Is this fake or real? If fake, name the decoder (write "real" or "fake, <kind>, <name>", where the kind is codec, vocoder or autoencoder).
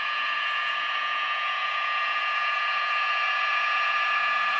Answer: fake, vocoder, Vocos